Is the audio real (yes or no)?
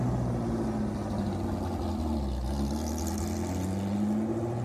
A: yes